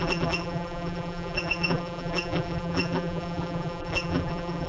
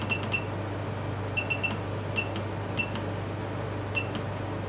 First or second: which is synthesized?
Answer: first